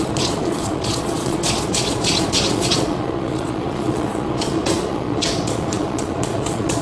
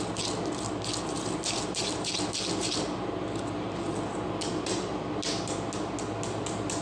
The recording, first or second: second